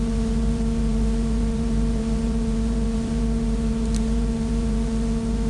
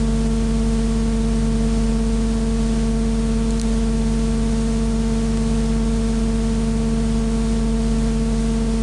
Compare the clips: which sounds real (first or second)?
second